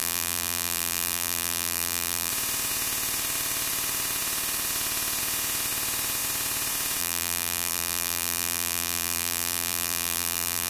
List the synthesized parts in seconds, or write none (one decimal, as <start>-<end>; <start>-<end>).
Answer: 0.0-2.3; 7.0-10.7